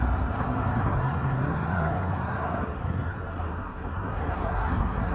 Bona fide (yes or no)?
no